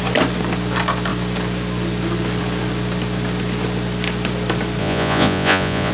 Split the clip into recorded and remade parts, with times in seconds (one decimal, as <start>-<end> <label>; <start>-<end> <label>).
0.0-4.8 recorded; 4.8-5.9 remade